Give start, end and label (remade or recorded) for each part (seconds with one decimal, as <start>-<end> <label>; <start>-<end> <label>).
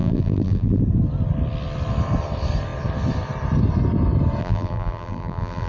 0.0-0.8 remade; 0.8-4.4 recorded; 4.4-5.7 remade